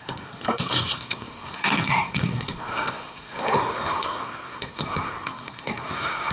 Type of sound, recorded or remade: remade